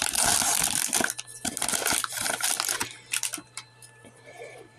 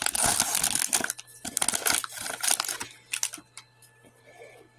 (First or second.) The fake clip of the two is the first